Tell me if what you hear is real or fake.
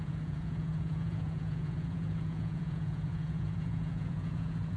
fake